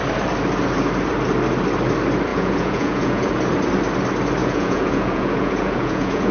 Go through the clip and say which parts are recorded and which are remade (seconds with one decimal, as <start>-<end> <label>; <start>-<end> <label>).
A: 0.0-2.3 recorded; 2.3-3.3 remade; 3.3-4.4 recorded; 4.4-6.3 remade